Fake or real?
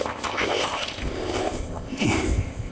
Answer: fake